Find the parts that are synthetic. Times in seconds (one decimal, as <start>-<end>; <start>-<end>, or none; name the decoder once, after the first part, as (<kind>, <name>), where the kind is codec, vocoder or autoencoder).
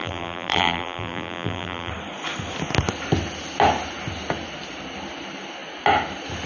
0.0-1.9 (vocoder, BigVGAN v2)